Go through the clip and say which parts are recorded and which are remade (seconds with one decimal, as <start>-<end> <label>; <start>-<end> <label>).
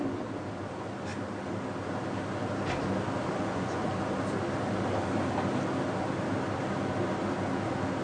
0.0-3.4 recorded; 3.4-3.9 remade; 3.9-8.0 recorded